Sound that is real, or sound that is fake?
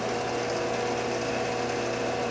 real